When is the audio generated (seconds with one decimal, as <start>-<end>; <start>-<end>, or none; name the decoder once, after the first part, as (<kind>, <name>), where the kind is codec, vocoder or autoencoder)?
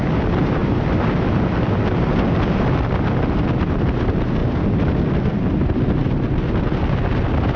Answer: none